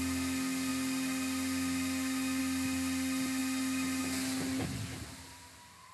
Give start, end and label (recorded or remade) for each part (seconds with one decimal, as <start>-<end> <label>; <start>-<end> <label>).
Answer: 0.0-5.9 recorded